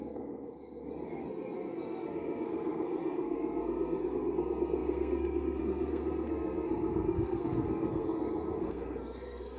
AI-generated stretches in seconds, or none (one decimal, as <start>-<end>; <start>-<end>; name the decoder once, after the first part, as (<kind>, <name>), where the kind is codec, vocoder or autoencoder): 0.0-9.6 (codec, SNAC)

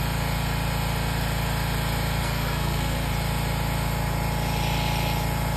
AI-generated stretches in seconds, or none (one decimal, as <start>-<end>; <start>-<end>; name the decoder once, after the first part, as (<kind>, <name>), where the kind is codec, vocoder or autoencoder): 2.2-3.1 (codec, SNAC)